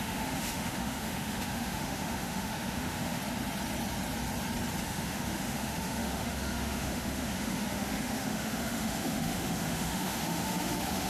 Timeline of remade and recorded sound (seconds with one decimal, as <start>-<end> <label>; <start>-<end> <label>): 0.0-3.2 remade; 3.2-4.8 recorded; 4.8-11.1 remade